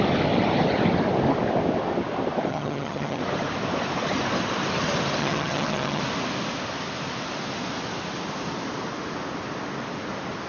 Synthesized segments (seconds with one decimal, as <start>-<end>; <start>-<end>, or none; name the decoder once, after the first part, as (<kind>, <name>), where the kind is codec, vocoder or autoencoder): 2.5-3.2 (vocoder, HiFi-GAN); 5.2-6.0